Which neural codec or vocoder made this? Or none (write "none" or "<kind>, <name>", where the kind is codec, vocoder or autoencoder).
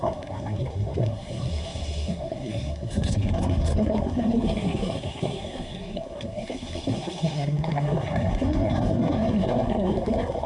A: codec, SNAC